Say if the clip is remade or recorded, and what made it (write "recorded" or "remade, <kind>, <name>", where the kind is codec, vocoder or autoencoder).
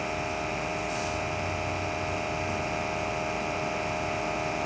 recorded